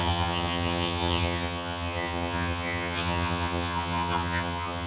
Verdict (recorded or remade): remade